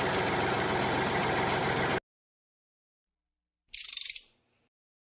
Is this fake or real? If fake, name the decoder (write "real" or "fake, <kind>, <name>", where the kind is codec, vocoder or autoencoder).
real